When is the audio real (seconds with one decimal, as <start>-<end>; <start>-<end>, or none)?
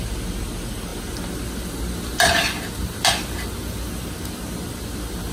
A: 0.0-5.3